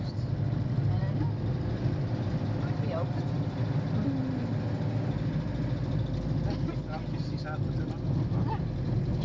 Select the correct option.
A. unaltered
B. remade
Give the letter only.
A